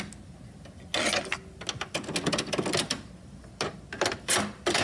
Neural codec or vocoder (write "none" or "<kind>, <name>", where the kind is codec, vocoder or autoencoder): none